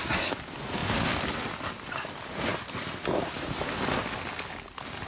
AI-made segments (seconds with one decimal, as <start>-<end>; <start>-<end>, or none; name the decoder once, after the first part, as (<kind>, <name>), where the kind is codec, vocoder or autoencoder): none